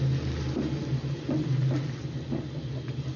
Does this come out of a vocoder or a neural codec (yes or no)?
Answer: no